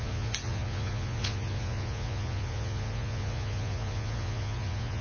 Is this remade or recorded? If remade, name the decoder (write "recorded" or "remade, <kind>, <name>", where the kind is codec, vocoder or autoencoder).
remade, vocoder, Vocos